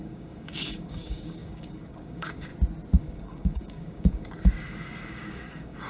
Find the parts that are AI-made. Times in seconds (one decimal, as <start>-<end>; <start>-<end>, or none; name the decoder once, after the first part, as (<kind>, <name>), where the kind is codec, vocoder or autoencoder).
0.0-2.5 (codec, DAC); 3.0-5.9